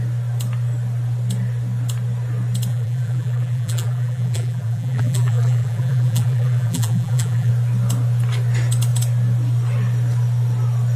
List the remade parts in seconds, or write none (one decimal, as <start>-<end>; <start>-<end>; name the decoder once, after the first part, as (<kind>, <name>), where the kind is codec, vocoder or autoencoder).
2.7-7.5 (vocoder, BigVGAN v2)